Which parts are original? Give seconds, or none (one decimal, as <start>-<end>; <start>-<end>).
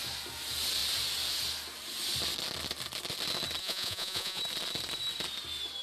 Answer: 0.0-3.6; 4.4-5.8